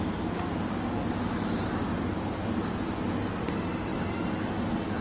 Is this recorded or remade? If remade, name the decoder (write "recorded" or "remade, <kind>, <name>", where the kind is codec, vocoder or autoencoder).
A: recorded